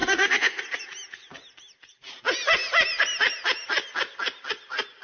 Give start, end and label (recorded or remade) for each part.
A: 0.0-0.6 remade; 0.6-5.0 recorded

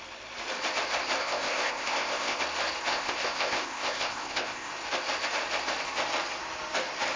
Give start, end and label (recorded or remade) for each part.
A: 0.0-1.2 recorded; 1.2-2.4 remade; 2.4-2.9 recorded; 2.9-4.7 remade; 4.7-7.2 recorded

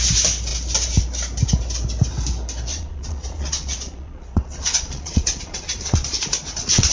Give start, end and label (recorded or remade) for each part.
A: 0.0-2.7 recorded; 2.7-6.9 remade

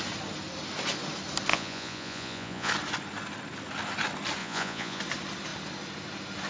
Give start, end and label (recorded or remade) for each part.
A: 0.0-1.5 recorded; 1.5-2.7 remade; 2.7-4.4 recorded; 4.4-5.0 remade; 5.0-6.5 recorded